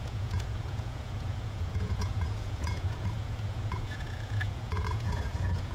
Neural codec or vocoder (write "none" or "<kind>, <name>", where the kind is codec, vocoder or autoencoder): vocoder, Vocos